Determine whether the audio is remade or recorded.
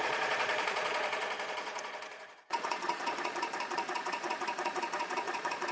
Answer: remade